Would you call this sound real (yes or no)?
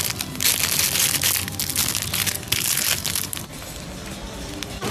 yes